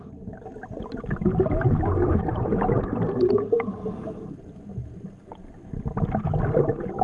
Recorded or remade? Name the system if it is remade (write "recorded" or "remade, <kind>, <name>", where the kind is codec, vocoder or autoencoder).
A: recorded